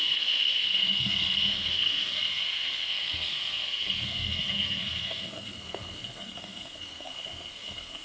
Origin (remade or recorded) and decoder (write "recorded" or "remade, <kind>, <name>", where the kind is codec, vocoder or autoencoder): remade, codec, SNAC